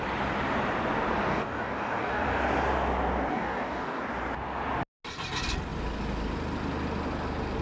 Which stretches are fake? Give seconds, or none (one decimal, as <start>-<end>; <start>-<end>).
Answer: 1.3-2.4; 3.3-4.0